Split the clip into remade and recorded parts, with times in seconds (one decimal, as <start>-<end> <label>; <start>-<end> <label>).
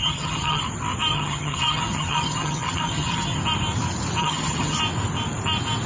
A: 0.0-0.6 remade; 0.6-1.1 recorded; 1.1-3.4 remade; 3.4-4.2 recorded; 4.2-4.8 remade; 4.8-5.9 recorded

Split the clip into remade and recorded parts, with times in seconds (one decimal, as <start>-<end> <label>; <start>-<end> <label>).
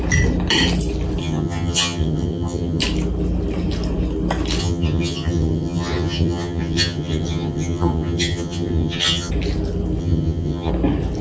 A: 0.0-1.2 recorded; 1.2-2.8 remade; 2.8-4.6 recorded; 4.6-9.3 remade; 9.3-10.0 recorded; 10.0-10.7 remade; 10.7-11.2 recorded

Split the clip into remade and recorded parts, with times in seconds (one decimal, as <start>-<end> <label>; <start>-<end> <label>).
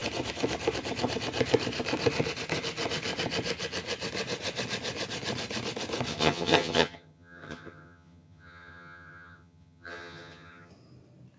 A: 0.0-6.1 recorded; 6.1-10.7 remade; 10.7-11.4 recorded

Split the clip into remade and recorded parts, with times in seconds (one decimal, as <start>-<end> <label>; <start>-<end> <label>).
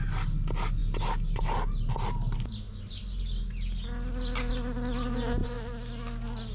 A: 0.0-6.5 recorded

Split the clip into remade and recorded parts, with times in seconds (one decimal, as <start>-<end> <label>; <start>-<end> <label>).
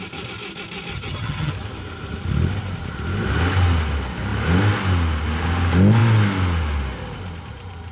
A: 0.0-0.9 recorded; 0.9-1.5 remade; 1.5-7.9 recorded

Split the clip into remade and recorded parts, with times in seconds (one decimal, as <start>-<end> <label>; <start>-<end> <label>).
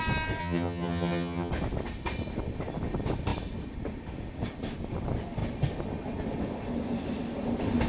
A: 0.0-0.4 recorded; 0.4-1.5 remade; 1.5-7.9 recorded